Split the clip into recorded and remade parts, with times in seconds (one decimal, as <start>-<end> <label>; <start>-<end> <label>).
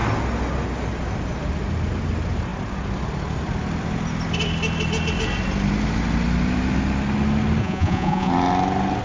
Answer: 0.0-7.6 recorded; 7.6-8.3 remade; 8.3-9.0 recorded